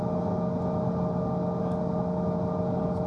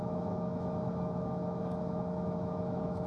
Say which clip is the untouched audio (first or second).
first